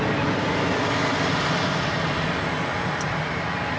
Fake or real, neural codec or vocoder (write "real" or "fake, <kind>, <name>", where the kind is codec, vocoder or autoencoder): real